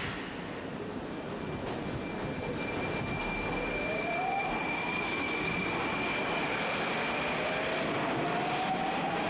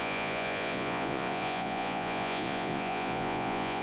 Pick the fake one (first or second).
second